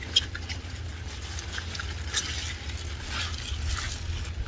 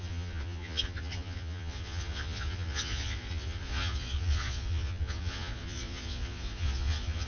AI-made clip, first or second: second